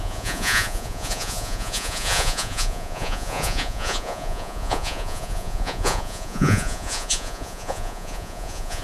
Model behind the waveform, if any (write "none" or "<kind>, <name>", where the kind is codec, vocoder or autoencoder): vocoder, Vocos